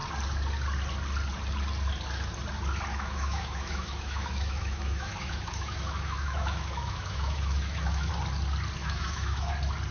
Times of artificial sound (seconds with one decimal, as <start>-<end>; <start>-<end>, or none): 2.9-8.1; 8.8-9.5